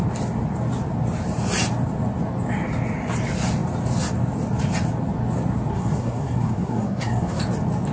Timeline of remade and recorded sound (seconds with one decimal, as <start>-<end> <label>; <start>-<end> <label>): 0.0-5.7 recorded; 5.7-7.4 remade; 7.4-7.9 recorded